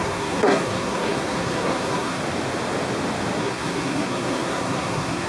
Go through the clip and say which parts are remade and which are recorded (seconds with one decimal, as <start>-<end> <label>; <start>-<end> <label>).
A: 0.0-2.2 remade; 2.2-3.4 recorded; 3.4-5.3 remade